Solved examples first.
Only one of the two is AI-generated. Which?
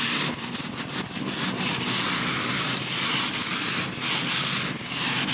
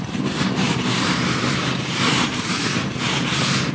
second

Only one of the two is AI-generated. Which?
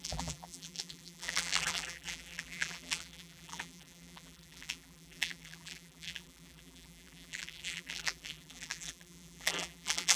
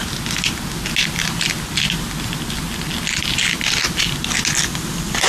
first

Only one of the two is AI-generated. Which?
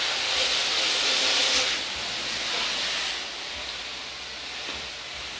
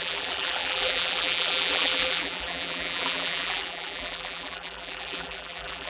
second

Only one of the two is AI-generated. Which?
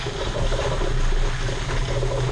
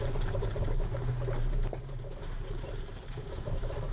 second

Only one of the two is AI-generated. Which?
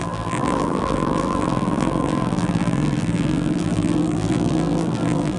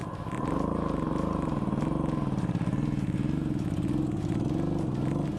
first